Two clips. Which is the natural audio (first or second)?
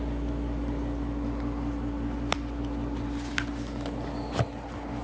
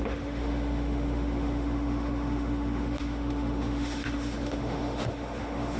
first